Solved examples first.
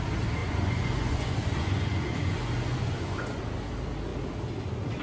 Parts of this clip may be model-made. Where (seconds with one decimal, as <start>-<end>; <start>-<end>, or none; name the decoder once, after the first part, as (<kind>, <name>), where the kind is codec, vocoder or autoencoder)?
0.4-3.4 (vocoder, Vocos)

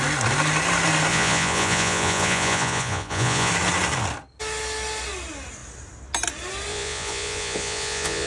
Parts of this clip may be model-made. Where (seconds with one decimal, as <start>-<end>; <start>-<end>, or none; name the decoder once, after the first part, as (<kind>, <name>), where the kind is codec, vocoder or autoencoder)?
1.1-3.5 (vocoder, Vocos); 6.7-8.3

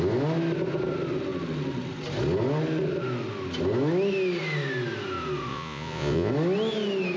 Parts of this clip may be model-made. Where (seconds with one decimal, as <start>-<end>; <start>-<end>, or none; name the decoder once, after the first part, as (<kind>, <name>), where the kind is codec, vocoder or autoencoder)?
5.5-6.3 (vocoder, Vocos)

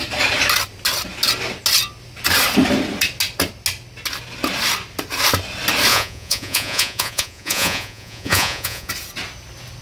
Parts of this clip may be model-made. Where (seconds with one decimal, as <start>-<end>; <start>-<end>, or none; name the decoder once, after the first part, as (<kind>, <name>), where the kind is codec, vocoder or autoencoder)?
5.9-8.9 (vocoder, Vocos)

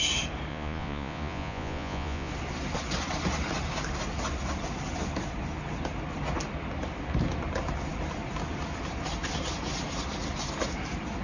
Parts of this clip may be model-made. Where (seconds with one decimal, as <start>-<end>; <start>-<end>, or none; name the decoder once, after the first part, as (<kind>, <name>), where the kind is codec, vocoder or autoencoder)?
0.5-2.3 (vocoder, Vocos)